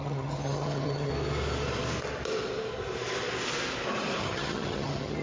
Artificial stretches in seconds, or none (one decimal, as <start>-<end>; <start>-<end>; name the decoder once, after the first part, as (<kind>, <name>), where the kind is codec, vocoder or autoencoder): 0.0-1.1 (vocoder, HiFi-GAN); 4.2-5.2